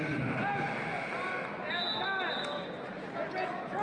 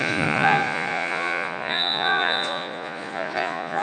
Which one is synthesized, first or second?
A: second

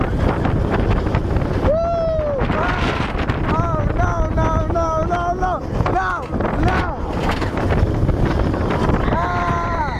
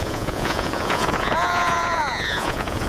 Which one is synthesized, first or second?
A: second